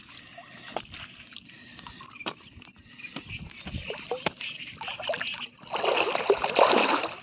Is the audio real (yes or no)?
yes